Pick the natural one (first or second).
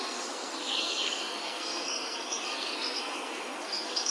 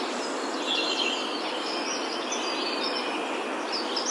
second